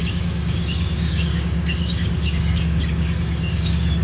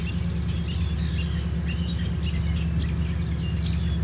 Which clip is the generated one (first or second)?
first